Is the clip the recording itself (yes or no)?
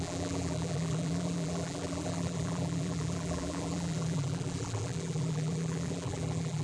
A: no